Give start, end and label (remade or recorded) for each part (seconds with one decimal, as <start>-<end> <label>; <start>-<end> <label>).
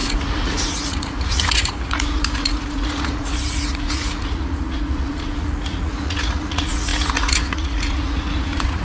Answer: 0.0-8.8 remade